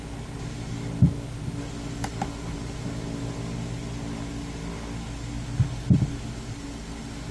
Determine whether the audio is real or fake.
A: real